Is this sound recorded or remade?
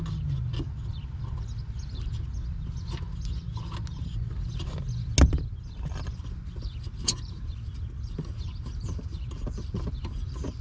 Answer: recorded